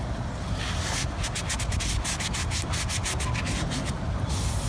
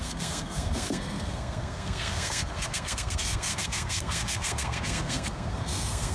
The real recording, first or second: first